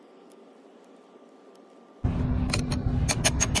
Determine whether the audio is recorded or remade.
recorded